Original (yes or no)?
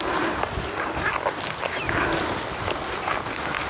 yes